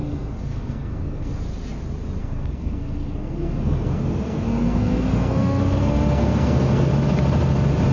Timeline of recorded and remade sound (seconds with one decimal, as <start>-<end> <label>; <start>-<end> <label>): 0.0-1.3 remade; 1.3-2.2 recorded; 2.2-6.9 remade; 6.9-7.9 recorded